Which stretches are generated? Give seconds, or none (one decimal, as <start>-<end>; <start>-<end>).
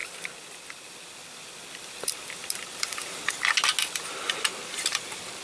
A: 0.0-3.2